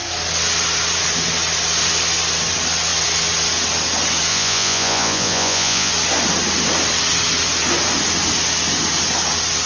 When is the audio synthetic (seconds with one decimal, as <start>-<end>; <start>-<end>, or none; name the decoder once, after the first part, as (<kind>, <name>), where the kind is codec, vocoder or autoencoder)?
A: 4.3-5.9 (vocoder, Vocos)